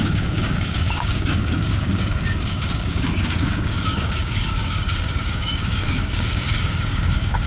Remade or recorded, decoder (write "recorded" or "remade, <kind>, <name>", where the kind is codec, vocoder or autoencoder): remade, codec, DAC